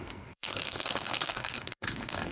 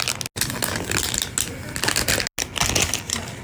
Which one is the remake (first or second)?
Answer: first